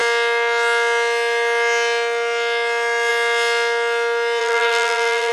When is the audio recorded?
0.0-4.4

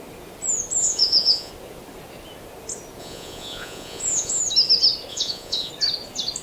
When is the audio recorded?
0.0-0.8; 1.5-3.0; 4.4-5.1; 5.7-6.4

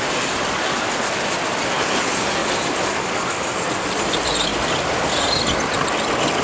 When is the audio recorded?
0.0-6.4

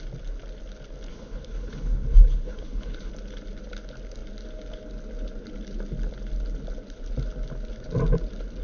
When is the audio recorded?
0.0-1.1; 3.1-8.6